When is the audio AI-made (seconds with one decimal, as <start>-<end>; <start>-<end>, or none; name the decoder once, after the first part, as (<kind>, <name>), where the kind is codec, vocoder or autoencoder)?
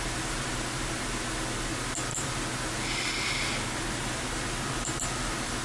none